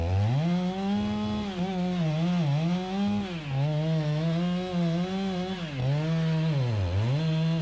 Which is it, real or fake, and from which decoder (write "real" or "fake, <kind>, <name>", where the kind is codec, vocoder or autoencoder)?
real